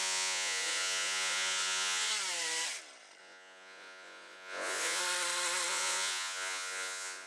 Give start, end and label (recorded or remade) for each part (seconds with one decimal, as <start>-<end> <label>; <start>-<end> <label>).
0.0-2.1 remade; 2.1-3.2 recorded; 3.2-5.0 remade; 5.0-5.7 recorded; 5.7-7.3 remade